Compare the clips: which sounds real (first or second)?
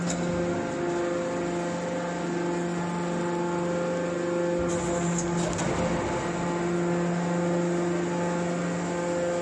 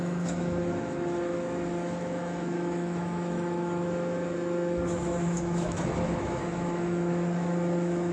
first